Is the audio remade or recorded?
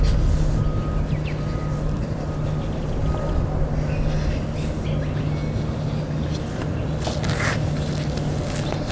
recorded